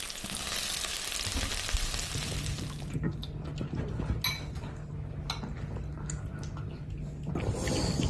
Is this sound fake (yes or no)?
no